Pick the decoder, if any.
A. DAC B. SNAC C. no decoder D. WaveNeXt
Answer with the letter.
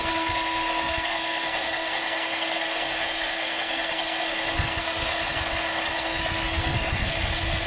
B